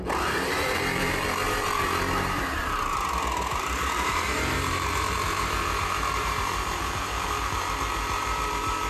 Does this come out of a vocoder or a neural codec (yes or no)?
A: yes